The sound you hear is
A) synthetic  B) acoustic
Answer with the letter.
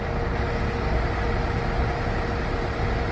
B